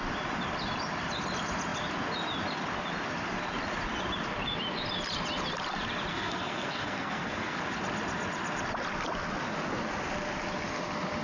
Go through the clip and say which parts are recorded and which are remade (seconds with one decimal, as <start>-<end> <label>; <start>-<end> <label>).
0.0-6.1 recorded; 6.1-7.6 remade; 7.6-11.2 recorded